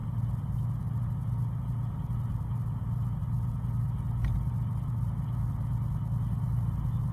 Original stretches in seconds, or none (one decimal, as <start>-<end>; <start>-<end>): 0.0-7.1